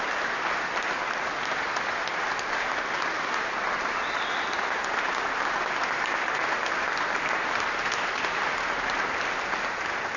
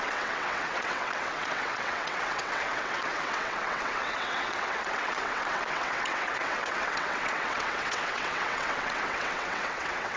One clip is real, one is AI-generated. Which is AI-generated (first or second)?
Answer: second